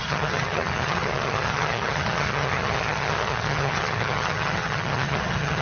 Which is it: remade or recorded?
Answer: remade